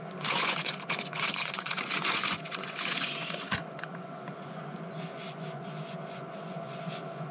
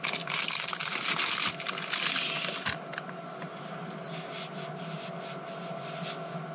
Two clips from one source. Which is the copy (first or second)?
first